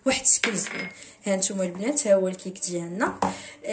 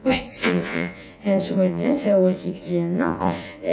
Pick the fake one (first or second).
second